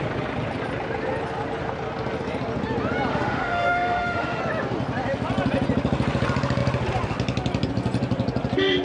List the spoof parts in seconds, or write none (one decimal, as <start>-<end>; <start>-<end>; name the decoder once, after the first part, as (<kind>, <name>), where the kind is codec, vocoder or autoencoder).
3.1-4.4 (autoencoder, DAC-VAE)